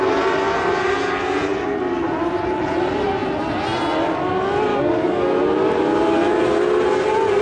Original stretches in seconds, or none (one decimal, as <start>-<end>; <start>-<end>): 0.0-4.7; 5.4-7.4